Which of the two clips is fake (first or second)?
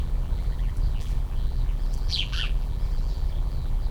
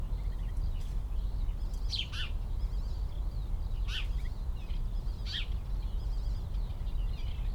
first